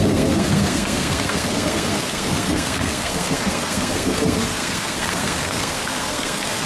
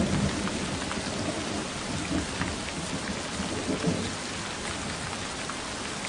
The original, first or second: second